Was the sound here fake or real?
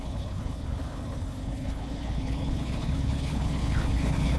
fake